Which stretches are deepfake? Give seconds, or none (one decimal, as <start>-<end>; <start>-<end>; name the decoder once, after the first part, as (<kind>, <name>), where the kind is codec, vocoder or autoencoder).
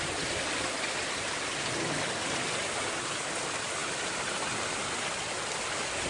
none